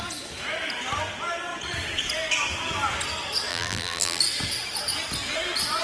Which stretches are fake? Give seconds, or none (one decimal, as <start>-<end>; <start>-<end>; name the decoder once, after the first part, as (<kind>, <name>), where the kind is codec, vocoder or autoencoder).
3.5-4.2 (vocoder, BigVGAN v2)